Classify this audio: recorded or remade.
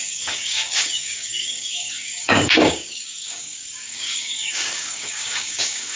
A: remade